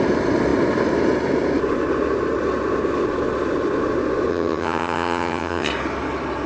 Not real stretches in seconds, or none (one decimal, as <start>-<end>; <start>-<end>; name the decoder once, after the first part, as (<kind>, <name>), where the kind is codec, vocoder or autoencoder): 4.3-5.7 (vocoder, HiFi-GAN)